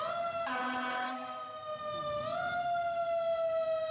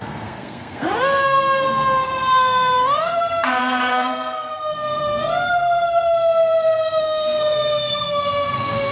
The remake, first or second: second